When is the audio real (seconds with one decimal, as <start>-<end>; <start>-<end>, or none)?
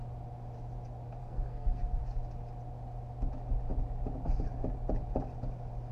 0.0-1.2; 2.0-5.9